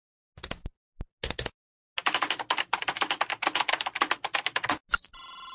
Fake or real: real